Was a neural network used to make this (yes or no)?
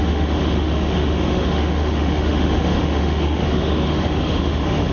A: yes